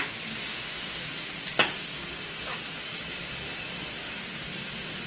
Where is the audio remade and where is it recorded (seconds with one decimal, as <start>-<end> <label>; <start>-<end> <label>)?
0.0-0.5 recorded; 0.5-1.0 remade; 1.0-5.1 recorded